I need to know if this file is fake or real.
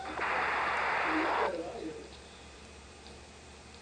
fake